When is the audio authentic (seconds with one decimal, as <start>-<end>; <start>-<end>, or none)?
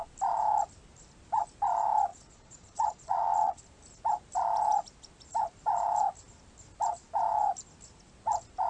0.0-2.1; 3.6-8.7